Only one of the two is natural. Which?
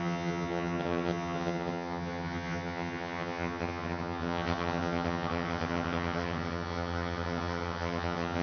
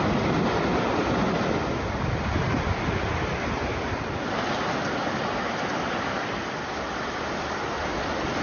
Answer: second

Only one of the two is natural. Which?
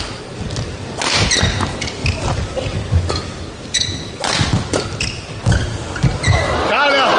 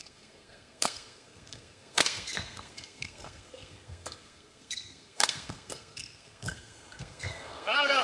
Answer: first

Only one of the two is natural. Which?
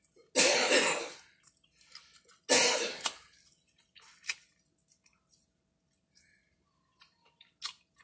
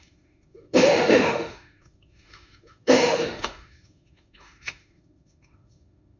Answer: first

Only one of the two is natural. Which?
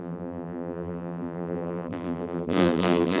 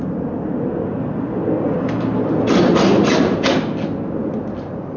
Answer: second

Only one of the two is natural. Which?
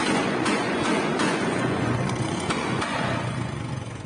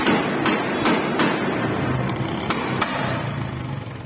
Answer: second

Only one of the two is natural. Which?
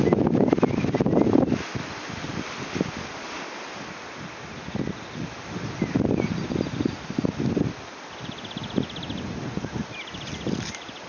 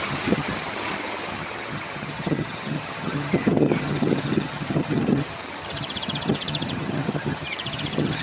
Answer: first